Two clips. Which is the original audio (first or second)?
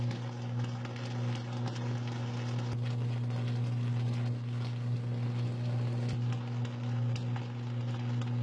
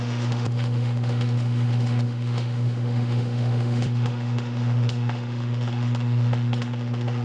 first